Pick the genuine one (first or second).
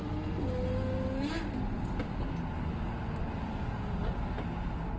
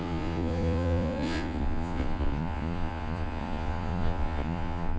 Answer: first